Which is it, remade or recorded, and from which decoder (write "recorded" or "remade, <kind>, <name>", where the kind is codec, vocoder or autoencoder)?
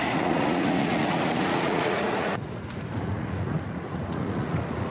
remade, vocoder, Vocos